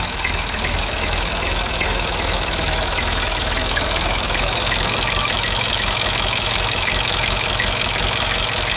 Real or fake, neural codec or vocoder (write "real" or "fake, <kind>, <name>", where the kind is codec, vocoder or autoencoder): fake, autoencoder, DAC-VAE